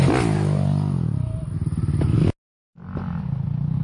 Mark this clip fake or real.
real